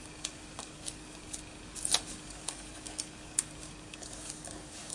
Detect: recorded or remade remade